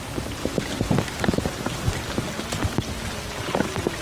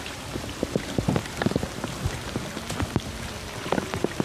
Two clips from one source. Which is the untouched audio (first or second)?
first